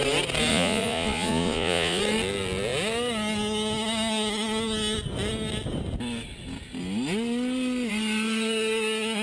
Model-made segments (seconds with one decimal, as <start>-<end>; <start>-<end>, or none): 0.5-2.0